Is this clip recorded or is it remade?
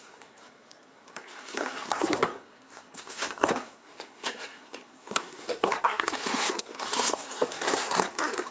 remade